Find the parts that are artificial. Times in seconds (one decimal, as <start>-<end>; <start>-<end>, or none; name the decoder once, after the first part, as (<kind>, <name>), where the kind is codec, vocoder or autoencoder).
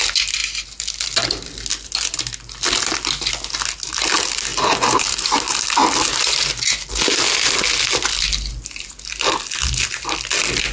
none